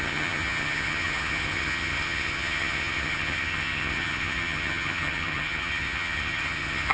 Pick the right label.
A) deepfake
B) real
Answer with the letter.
A